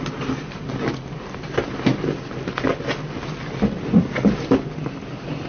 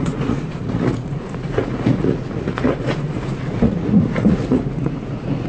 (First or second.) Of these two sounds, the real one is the first